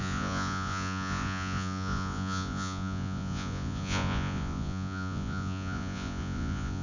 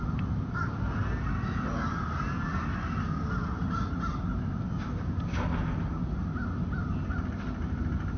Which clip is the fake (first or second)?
first